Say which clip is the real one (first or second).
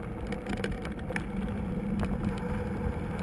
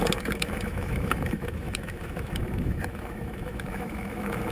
first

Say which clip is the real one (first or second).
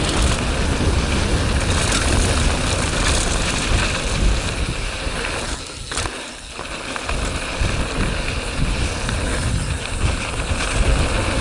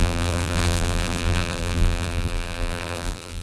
first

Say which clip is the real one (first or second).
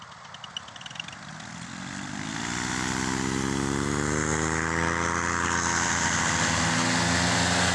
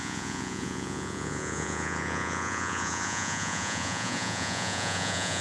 first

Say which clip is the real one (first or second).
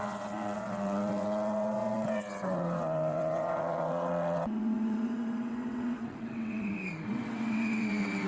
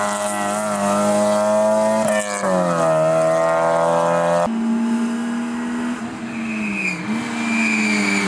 second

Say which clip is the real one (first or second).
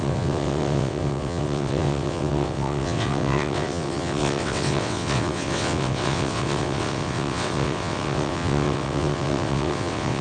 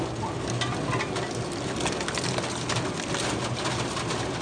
second